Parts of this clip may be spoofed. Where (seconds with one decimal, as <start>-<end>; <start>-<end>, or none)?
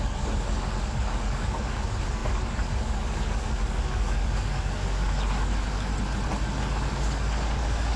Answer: 0.0-5.9; 6.6-8.0